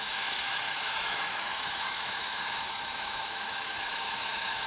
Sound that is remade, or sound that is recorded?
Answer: remade